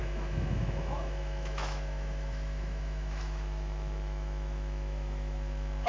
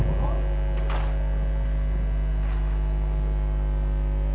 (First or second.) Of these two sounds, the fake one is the first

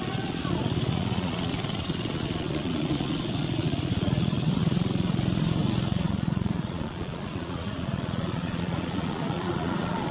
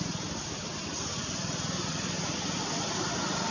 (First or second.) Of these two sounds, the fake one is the first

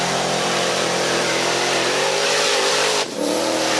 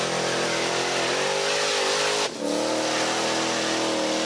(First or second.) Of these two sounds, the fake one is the first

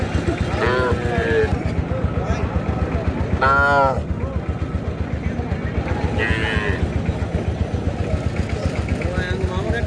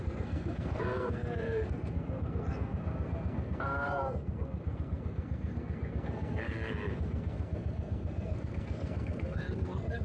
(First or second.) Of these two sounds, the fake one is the second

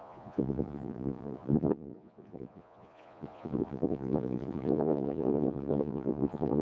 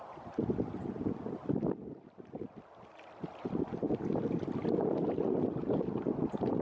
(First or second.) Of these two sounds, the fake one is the first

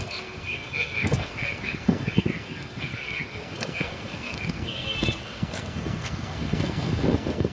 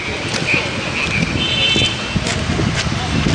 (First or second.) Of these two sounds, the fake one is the first